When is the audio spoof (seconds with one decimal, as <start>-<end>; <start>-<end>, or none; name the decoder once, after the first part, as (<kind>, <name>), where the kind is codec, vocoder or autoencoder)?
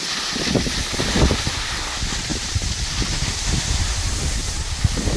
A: 2.3-3.6 (vocoder, BigVGAN v2); 4.4-5.2